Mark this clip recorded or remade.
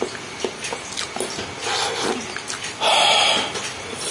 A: recorded